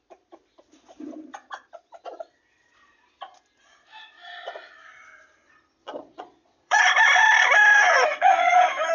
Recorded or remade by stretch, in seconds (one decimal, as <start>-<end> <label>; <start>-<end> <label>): 0.0-5.8 recorded; 5.8-6.8 remade; 6.8-7.7 recorded; 7.7-8.5 remade; 8.5-8.9 recorded